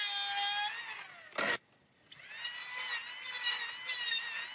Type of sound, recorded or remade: recorded